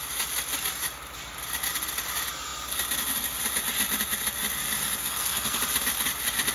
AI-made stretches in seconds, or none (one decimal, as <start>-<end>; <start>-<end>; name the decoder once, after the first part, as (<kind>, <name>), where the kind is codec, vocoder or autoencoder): 5.0-5.6 (codec, SNAC)